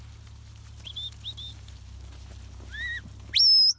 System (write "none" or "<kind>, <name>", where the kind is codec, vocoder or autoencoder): none